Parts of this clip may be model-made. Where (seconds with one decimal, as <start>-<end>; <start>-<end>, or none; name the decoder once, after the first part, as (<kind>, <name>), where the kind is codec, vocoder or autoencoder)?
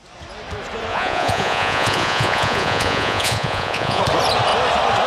0.9-4.0 (vocoder, Vocos)